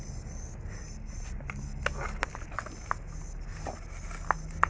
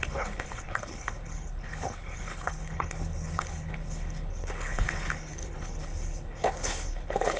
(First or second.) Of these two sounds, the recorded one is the first